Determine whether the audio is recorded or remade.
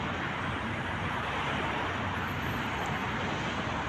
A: recorded